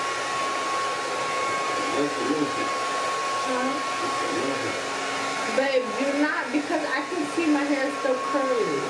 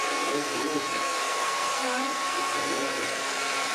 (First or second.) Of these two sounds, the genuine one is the first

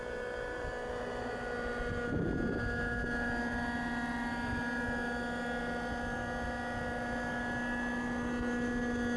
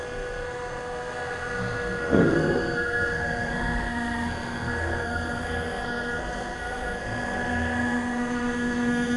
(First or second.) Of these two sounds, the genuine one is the first